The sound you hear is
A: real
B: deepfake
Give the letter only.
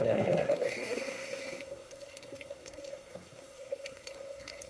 B